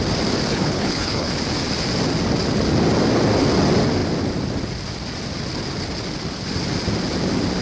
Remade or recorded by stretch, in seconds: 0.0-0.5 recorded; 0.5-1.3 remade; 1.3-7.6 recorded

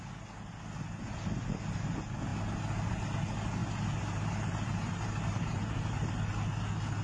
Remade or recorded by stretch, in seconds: 0.0-3.6 recorded; 3.6-6.1 remade; 6.1-7.0 recorded

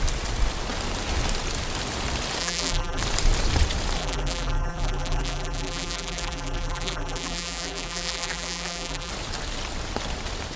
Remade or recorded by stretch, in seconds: 0.0-2.4 recorded; 2.4-3.0 remade; 3.0-4.0 recorded; 4.0-9.1 remade; 9.1-10.6 recorded

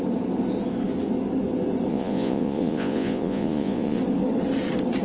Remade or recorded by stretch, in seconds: 0.0-1.9 recorded; 1.9-4.0 remade; 4.0-5.0 recorded

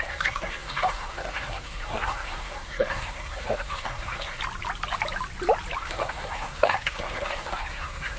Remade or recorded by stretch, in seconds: 0.0-4.4 remade; 4.4-5.8 recorded; 5.8-8.2 remade